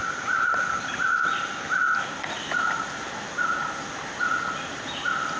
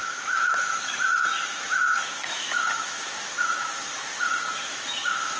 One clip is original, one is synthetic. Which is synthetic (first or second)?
second